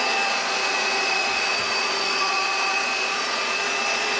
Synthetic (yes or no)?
yes